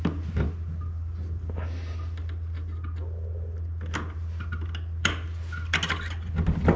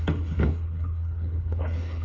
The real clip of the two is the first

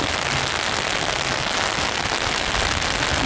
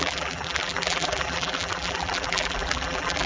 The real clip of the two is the first